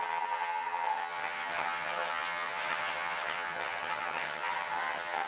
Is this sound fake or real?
fake